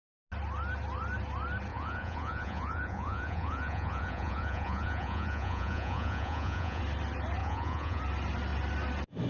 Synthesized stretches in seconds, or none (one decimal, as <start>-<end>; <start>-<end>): 1.7-6.8; 7.4-8.0